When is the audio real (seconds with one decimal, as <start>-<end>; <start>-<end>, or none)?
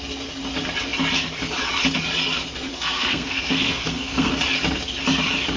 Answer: 0.0-2.7; 4.3-5.6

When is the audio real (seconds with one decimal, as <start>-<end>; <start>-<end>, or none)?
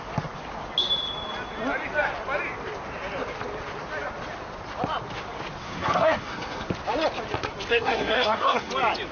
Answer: 0.0-5.6; 6.7-7.7; 8.7-9.1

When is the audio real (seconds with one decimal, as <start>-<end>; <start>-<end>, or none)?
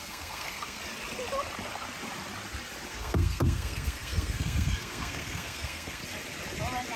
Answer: 0.8-2.9; 6.0-7.0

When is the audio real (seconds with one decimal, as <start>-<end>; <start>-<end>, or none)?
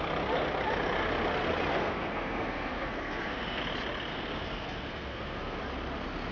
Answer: 0.0-1.7; 3.6-4.1; 5.6-6.3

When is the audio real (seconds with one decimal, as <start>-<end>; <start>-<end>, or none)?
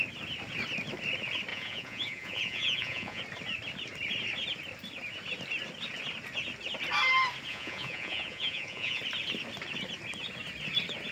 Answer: 0.0-1.5; 3.2-7.5; 9.0-11.1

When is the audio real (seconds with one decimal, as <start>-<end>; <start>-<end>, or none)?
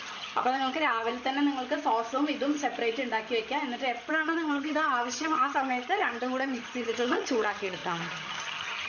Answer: 1.1-4.1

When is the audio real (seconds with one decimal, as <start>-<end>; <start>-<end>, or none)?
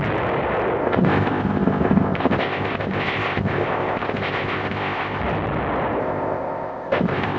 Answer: 0.0-0.8; 5.2-6.0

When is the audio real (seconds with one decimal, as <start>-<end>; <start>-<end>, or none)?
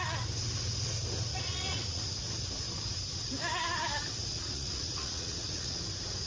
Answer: 0.0-1.3; 2.0-4.3; 5.8-6.3